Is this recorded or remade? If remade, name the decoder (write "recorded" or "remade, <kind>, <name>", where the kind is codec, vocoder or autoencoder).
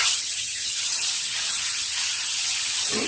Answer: remade, vocoder, HiFi-GAN